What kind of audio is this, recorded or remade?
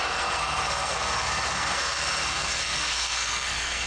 remade